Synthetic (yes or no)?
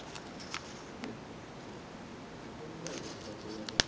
no